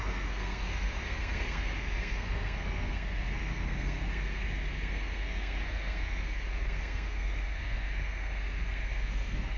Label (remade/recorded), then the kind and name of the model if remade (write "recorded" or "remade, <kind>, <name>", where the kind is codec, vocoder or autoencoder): remade, codec, SNAC